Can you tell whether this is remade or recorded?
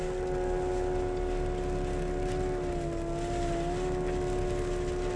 recorded